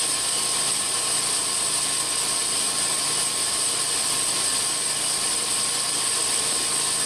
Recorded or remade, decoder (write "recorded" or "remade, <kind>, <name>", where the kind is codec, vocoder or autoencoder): recorded